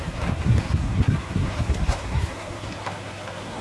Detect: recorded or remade remade